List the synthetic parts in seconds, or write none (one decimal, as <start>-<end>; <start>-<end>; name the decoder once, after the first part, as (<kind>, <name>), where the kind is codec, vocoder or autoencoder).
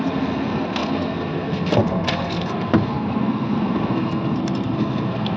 0.0-5.4 (codec, SNAC)